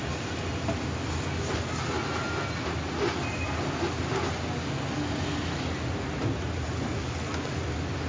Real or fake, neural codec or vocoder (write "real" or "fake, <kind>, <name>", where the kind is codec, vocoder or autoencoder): real